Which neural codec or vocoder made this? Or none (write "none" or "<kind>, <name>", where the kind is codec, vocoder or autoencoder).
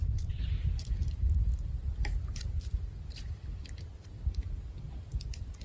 none